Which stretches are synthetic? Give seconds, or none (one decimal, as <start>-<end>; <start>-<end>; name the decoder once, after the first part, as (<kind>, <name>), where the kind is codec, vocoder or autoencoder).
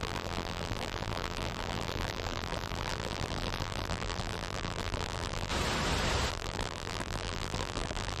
0.0-5.5 (vocoder, BigVGAN v2); 6.3-8.2